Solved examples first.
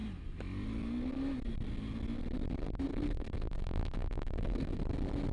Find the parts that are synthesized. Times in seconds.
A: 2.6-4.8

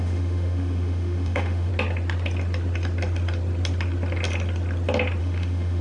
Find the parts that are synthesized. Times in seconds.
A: 0.0-1.7; 5.2-5.8

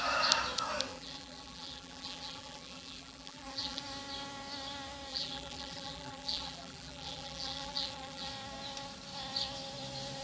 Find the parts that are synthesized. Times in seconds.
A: 0.9-3.8; 5.1-8.3

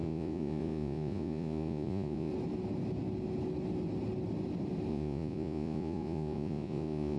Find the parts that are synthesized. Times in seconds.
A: 0.0-2.3; 4.9-7.2